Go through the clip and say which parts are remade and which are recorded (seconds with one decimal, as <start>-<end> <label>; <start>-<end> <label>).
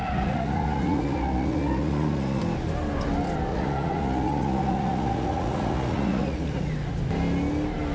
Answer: 0.0-2.4 remade; 2.4-3.5 recorded; 3.5-6.7 remade; 6.7-7.9 recorded